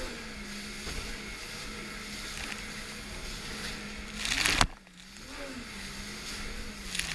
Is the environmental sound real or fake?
real